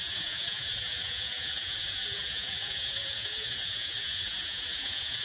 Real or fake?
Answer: fake